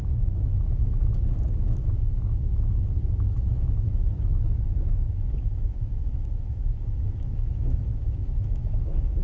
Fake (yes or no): yes